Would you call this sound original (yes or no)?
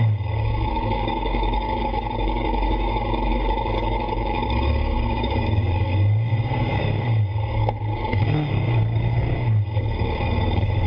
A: no